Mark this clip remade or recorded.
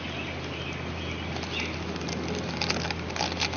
recorded